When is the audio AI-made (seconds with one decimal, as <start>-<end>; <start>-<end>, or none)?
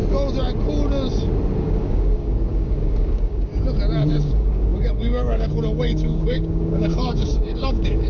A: 1.6-3.5; 4.1-8.1